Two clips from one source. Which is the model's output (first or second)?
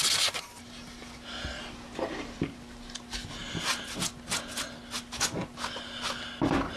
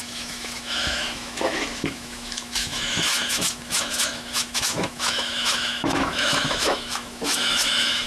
second